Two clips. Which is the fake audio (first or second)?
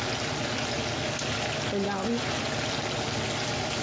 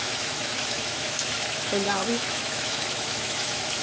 second